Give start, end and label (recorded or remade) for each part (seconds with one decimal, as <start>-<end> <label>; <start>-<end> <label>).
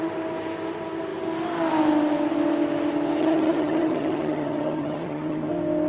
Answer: 0.0-3.2 recorded; 3.2-5.5 remade; 5.5-5.9 recorded